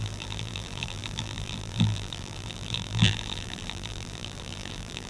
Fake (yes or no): yes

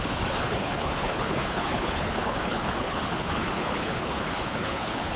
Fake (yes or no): yes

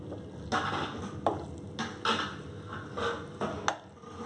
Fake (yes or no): no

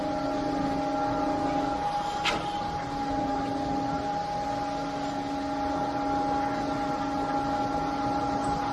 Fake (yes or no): no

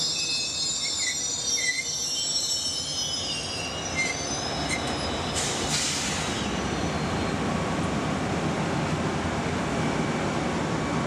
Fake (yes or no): no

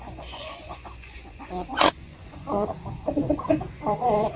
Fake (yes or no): yes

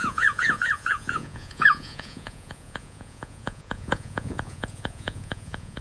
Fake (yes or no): yes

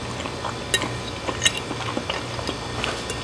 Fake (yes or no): no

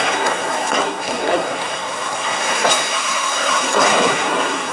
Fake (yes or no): yes